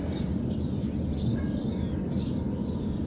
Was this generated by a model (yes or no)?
no